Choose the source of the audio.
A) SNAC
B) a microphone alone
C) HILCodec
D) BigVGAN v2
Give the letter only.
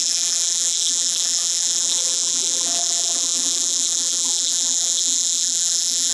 D